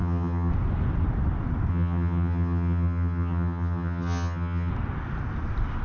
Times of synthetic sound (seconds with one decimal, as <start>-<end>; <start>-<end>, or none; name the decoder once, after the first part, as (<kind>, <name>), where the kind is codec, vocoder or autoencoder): 0.0-0.5 (vocoder, HiFi-GAN); 1.7-4.7